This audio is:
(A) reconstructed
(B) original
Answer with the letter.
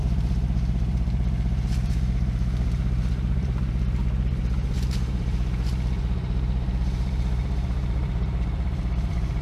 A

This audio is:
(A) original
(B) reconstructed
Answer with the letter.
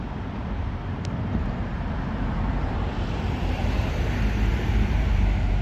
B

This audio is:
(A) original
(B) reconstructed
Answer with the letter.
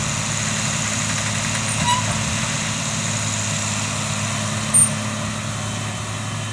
A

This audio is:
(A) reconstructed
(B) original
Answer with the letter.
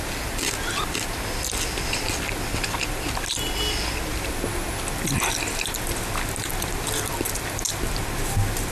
B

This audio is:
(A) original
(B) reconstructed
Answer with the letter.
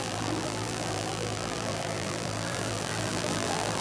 B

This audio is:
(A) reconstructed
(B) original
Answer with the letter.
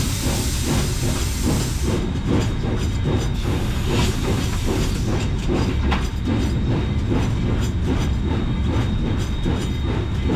B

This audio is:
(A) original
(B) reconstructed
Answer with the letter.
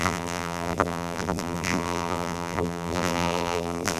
B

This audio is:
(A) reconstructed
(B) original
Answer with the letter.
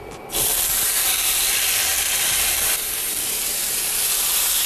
A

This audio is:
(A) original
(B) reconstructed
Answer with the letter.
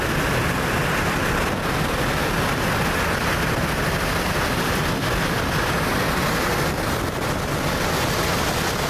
A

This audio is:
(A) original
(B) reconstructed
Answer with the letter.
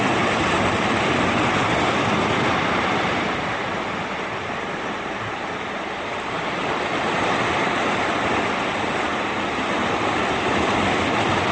A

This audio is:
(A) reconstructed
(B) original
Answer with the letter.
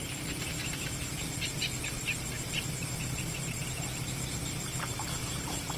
A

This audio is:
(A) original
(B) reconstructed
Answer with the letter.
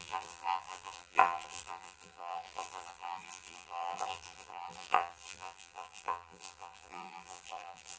B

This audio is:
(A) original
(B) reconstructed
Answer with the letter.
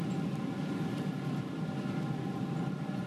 A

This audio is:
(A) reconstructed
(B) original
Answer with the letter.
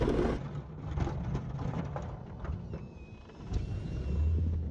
B